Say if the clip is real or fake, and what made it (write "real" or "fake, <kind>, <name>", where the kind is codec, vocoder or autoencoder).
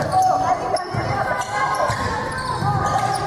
real